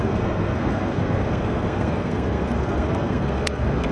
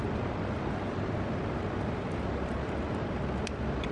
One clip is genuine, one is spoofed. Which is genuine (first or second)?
second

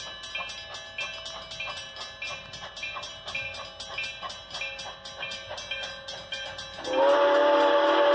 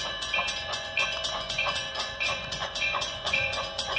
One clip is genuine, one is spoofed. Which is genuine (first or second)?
first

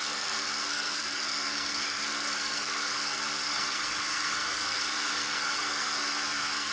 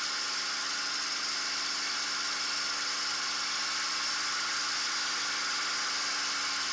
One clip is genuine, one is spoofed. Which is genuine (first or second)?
second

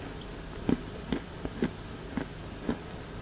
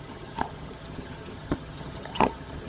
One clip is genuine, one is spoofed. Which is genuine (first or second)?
first